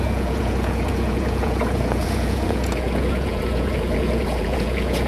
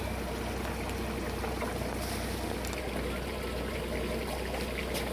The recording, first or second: second